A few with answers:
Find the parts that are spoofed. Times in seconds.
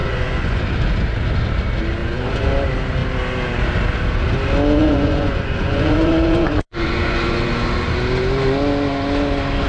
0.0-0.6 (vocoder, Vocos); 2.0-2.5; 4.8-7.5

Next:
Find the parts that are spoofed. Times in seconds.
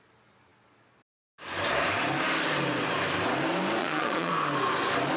3.8-4.3 (vocoder, Vocos)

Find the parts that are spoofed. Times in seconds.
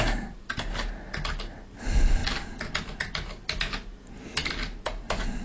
none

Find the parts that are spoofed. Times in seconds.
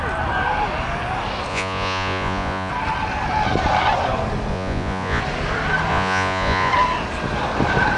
1.5-2.7 (vocoder, Vocos); 4.5-5.2; 5.9-6.7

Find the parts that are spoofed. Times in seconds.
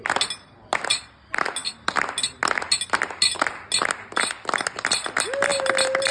none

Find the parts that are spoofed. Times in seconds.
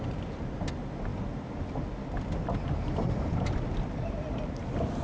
none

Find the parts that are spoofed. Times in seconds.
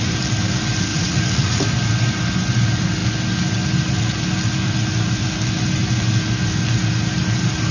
0.9-1.6 (vocoder, Vocos)